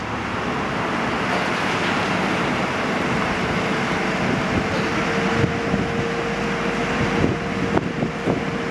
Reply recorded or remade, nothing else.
recorded